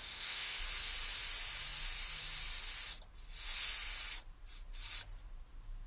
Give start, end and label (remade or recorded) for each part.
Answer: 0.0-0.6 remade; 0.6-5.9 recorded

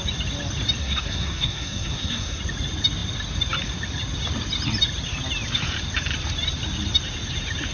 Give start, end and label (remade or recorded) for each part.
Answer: 0.0-0.8 recorded; 0.8-2.4 remade; 2.4-7.7 recorded